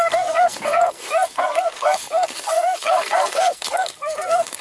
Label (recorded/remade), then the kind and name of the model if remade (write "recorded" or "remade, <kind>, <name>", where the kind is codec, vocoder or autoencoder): remade, codec, SNAC